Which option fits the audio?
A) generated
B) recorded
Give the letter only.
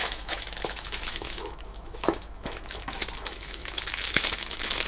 A